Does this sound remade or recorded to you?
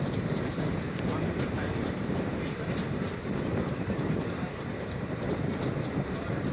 remade